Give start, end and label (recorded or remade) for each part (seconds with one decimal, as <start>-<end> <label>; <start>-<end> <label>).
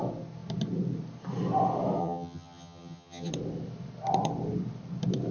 0.0-2.0 recorded; 2.0-3.3 remade; 3.3-5.3 recorded